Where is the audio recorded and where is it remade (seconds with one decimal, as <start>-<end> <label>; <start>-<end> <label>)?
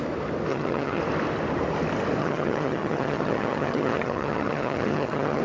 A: 0.0-0.5 recorded; 0.5-1.0 remade; 1.0-2.2 recorded; 2.2-5.4 remade